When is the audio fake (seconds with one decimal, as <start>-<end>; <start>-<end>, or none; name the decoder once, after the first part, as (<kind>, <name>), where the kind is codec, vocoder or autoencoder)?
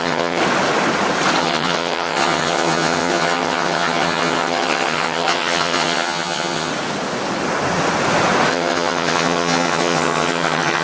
0.0-0.4 (vocoder, HiFi-GAN); 1.4-6.7; 8.5-10.8